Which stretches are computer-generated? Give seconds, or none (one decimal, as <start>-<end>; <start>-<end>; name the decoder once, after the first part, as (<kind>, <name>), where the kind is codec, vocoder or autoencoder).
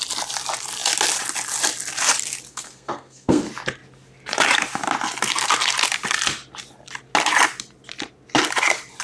2.5-3.4 (codec, SNAC)